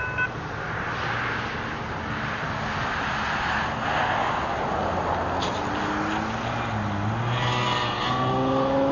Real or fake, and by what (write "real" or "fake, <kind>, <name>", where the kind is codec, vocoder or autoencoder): real